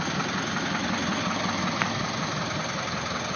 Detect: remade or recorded recorded